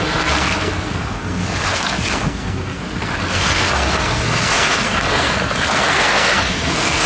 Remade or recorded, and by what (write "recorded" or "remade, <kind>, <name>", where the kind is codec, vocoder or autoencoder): remade, codec, SNAC